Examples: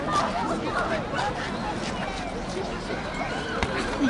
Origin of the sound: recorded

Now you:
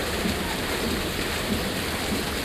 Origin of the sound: recorded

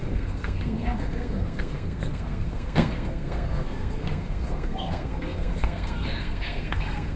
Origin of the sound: remade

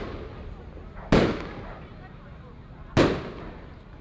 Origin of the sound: recorded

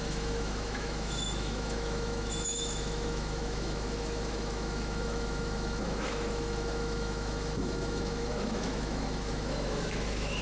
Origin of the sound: remade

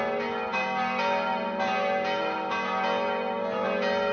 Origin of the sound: recorded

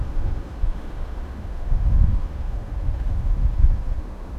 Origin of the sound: remade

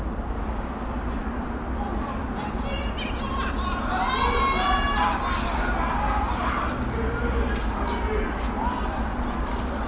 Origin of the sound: recorded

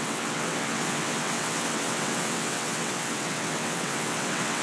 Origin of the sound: remade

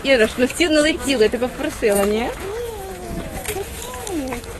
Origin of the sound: remade